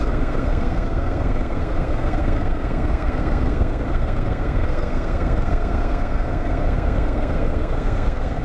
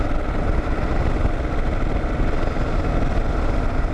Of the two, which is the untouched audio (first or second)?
second